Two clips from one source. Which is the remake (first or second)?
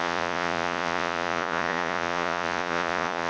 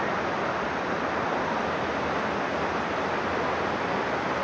first